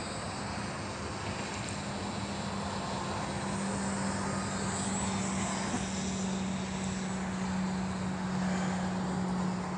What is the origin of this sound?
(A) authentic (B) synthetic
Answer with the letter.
A